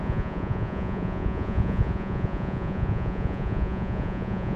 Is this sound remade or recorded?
remade